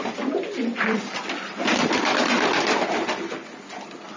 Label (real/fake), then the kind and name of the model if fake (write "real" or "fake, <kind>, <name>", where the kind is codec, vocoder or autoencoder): real